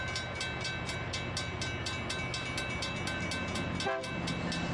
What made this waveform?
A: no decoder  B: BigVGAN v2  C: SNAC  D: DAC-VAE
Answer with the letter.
A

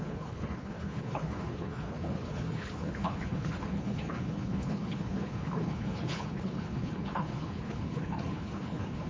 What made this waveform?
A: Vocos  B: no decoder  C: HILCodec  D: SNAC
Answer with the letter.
C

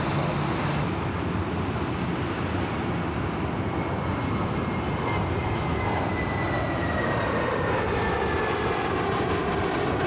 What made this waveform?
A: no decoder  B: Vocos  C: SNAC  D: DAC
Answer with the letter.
A